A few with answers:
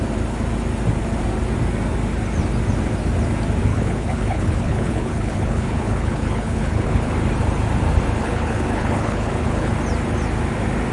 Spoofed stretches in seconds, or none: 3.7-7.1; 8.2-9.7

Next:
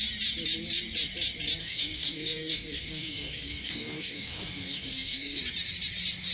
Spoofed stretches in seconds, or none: 1.6-5.4